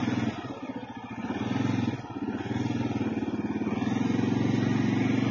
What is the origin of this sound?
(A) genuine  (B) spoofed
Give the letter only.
A